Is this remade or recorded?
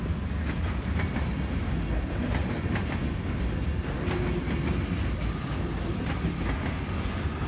recorded